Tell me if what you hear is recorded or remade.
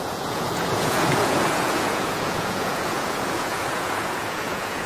remade